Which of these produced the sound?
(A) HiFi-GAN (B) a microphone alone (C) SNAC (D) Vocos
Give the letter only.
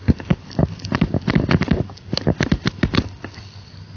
B